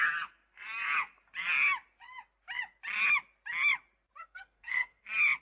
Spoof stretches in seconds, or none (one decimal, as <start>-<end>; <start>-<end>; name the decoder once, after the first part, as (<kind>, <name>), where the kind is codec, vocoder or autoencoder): 4.2-5.0 (codec, SNAC)